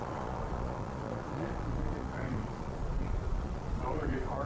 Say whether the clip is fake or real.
fake